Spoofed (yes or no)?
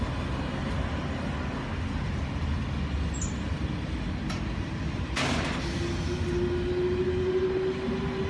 no